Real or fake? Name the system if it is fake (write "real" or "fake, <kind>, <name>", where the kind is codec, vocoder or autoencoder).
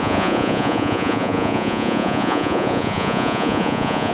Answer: fake, vocoder, Vocos